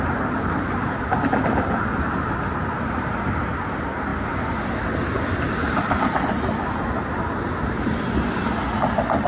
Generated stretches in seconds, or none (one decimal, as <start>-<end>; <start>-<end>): 5.6-6.2